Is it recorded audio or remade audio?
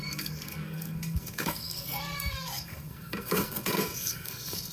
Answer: remade